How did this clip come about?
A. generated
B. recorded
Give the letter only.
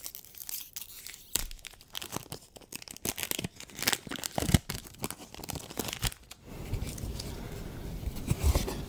B